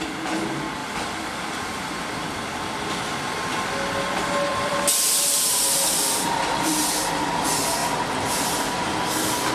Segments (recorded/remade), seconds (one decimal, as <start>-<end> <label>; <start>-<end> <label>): 0.0-0.8 recorded; 0.8-2.9 remade; 2.9-4.5 recorded; 4.5-7.1 remade; 7.1-7.8 recorded; 7.8-9.5 remade

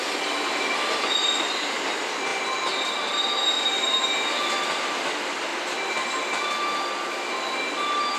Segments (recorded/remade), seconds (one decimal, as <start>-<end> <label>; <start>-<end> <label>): 0.0-8.2 recorded

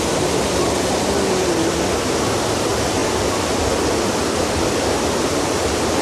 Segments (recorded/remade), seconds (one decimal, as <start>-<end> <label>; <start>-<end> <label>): 0.0-6.0 recorded

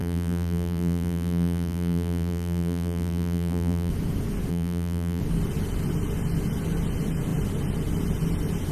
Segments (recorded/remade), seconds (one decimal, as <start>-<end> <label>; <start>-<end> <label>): 0.0-3.9 remade; 3.9-4.5 recorded; 4.5-5.2 remade; 5.2-8.7 recorded

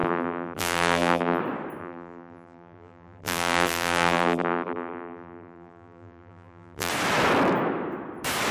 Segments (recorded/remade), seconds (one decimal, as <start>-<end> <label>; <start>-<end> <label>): 0.0-1.4 remade; 1.4-1.8 recorded; 1.8-6.9 remade; 6.9-8.5 recorded

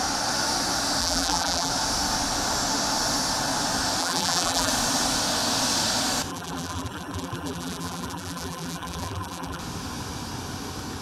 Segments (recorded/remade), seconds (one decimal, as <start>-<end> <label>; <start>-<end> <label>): 0.0-1.0 recorded; 1.0-1.7 remade; 1.7-4.0 recorded; 4.0-4.7 remade; 4.7-6.3 recorded; 6.3-9.6 remade; 9.6-11.0 recorded